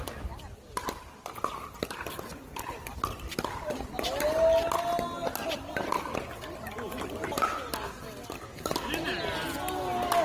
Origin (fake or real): real